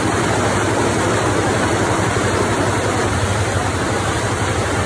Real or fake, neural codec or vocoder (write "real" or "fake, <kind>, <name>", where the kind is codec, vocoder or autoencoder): real